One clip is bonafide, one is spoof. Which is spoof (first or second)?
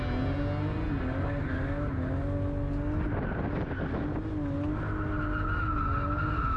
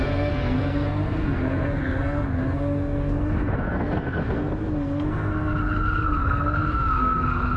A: second